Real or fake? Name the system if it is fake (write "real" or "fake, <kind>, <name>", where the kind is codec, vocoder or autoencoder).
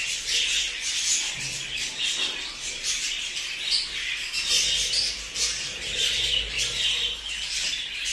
real